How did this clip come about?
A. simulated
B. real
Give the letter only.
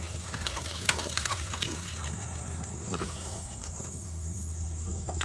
A